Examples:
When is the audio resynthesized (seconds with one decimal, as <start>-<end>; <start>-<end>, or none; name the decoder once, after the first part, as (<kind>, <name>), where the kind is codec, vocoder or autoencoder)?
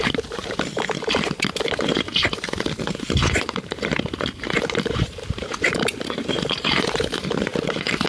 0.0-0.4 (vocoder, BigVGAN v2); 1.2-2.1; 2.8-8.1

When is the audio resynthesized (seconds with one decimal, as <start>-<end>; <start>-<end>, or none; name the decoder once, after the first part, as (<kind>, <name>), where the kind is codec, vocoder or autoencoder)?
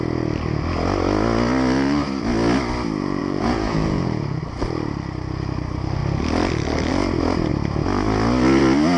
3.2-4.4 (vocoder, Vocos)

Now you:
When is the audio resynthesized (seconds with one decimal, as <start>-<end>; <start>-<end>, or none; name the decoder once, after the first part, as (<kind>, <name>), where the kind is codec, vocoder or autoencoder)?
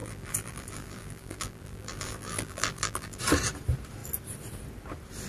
0.0-3.2 (vocoder, BigVGAN v2)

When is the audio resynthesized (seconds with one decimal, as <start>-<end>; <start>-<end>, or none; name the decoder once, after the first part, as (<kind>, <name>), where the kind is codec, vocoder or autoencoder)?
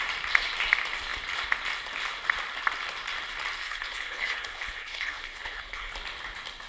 3.6-5.9 (codec, HILCodec)